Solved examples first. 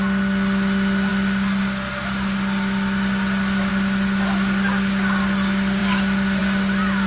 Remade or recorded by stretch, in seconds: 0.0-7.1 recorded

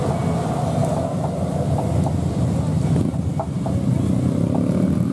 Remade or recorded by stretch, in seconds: 0.0-5.1 recorded

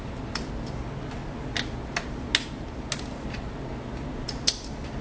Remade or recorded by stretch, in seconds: 0.0-5.0 recorded

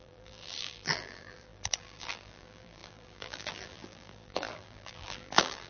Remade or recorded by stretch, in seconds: 0.0-5.7 remade